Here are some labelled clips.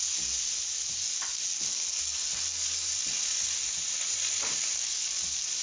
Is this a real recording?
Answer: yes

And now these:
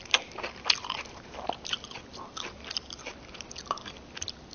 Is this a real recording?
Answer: yes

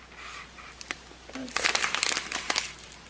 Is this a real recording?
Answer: yes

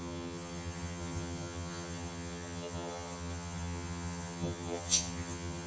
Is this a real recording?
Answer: no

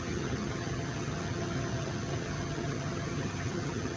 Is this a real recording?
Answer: no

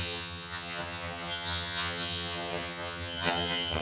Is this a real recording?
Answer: no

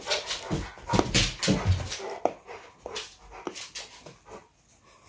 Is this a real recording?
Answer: yes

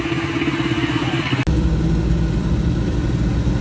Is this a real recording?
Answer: yes